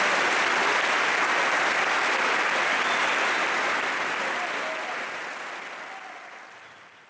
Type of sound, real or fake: real